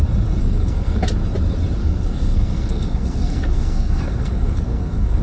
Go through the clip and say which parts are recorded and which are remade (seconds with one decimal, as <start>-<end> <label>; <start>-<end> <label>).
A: 0.0-0.4 recorded; 0.4-1.0 remade; 1.0-1.8 recorded; 1.8-5.2 remade